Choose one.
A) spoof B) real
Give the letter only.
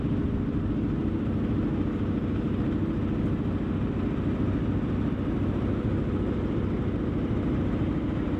B